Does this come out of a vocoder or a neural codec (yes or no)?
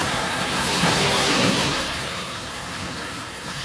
yes